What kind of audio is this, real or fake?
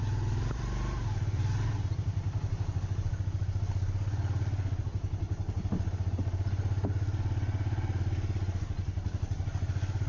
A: real